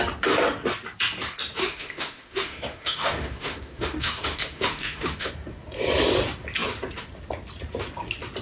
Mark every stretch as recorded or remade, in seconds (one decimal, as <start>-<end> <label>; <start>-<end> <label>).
0.0-1.6 recorded; 1.6-5.3 remade; 5.3-8.4 recorded